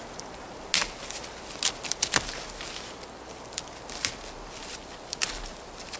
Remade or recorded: recorded